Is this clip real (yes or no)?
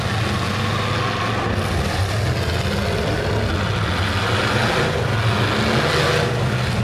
yes